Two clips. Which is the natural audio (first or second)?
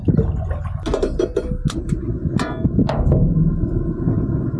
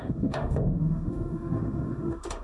first